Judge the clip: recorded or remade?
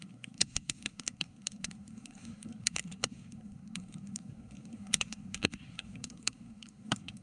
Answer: remade